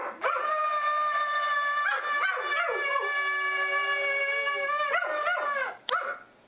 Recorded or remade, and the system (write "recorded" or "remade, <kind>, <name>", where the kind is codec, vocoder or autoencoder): recorded